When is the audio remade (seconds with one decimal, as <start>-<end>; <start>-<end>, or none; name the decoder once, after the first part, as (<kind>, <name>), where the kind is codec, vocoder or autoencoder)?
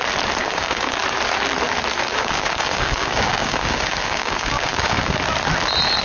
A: 0.4-1.0 (codec, DAC); 2.0-5.2